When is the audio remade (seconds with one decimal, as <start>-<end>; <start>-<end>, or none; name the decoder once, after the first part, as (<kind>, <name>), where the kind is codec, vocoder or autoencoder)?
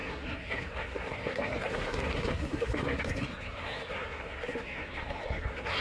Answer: 0.0-5.8 (codec, SNAC)